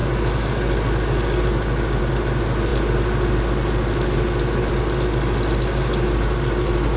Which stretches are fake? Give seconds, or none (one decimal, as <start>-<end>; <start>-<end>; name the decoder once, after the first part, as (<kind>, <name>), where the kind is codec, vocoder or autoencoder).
none